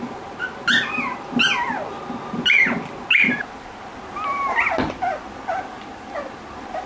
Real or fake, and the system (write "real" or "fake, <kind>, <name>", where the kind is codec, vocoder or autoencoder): real